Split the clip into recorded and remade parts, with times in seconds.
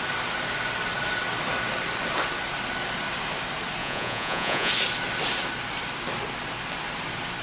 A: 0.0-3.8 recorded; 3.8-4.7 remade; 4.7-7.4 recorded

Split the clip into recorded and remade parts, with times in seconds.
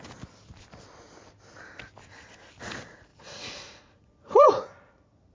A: 0.0-3.1 recorded; 3.1-4.6 remade; 4.6-5.3 recorded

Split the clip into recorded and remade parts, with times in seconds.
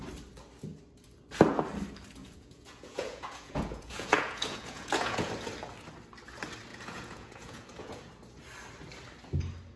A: 0.0-2.2 recorded; 2.2-5.3 remade; 5.3-6.7 recorded; 6.7-8.0 remade; 8.0-9.8 recorded